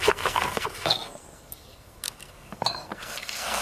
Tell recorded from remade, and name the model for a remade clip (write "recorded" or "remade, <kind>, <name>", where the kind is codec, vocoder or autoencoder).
remade, codec, SNAC